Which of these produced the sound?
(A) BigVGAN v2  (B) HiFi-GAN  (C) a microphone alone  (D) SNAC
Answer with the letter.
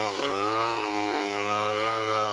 D